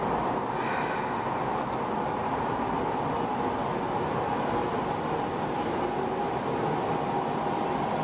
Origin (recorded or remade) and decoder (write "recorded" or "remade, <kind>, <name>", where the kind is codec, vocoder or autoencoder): recorded